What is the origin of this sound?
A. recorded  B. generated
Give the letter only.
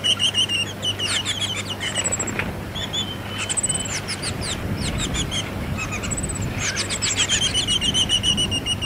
A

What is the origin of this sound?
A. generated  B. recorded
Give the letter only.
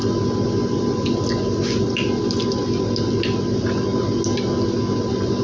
B